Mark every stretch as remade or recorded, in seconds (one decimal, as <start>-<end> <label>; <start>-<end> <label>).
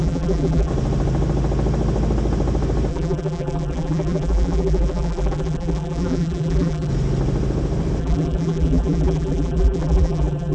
0.0-0.7 remade; 0.7-2.9 recorded; 2.9-6.9 remade; 6.9-8.0 recorded; 8.0-10.5 remade